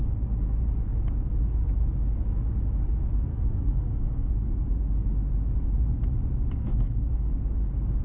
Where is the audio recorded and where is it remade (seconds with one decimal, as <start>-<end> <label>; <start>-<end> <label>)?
0.0-3.3 recorded; 3.3-4.3 remade; 4.3-6.6 recorded; 6.6-7.3 remade; 7.3-8.0 recorded